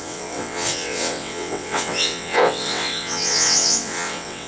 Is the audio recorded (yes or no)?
no